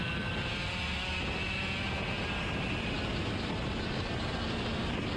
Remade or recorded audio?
recorded